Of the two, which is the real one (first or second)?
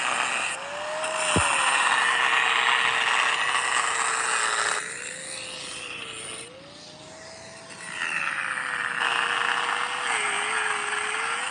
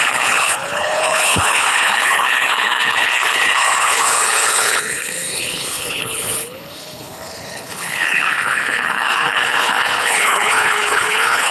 first